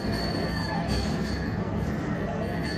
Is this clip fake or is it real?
fake